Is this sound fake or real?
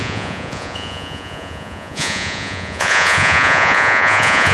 fake